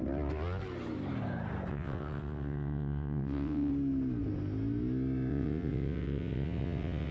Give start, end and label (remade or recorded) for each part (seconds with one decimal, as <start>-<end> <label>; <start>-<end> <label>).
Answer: 0.0-1.7 recorded; 1.7-3.7 remade; 3.7-5.3 recorded; 5.3-7.1 remade